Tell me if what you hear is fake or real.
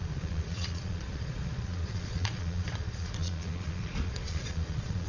fake